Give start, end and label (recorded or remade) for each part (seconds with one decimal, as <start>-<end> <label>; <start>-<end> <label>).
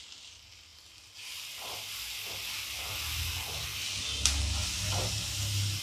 0.0-5.8 recorded